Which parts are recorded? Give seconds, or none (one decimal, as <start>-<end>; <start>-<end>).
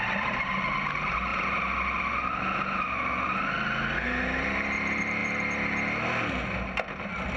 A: 0.0-7.4